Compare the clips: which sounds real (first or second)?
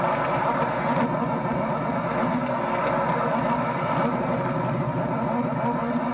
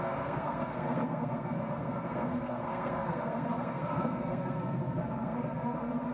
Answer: first